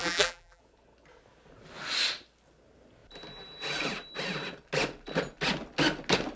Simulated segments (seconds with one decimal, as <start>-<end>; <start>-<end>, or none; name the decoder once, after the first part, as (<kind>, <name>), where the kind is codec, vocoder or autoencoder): 0.0-0.6 (vocoder, BigVGAN v2)